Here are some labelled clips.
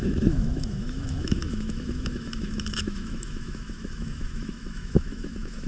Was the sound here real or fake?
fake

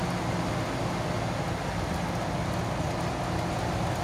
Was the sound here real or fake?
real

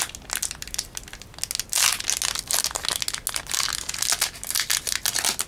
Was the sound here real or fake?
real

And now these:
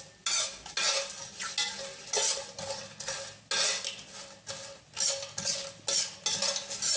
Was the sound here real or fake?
real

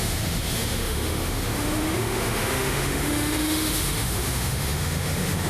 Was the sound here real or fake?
fake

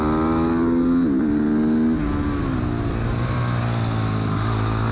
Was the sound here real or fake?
real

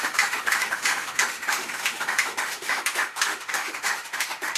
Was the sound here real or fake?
fake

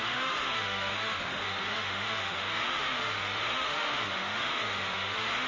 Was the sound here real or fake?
fake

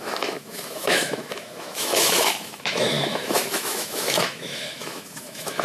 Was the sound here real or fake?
fake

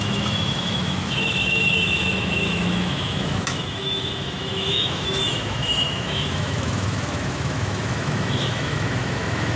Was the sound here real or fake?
fake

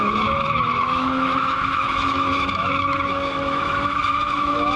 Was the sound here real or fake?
fake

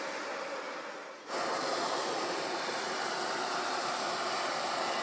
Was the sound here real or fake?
real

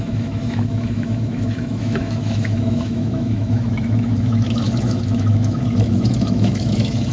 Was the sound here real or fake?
fake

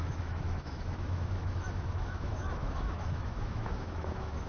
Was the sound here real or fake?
fake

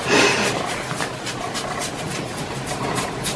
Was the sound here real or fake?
real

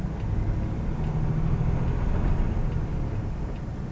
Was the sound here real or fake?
real